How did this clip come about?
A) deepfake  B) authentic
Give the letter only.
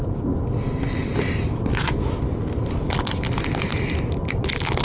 B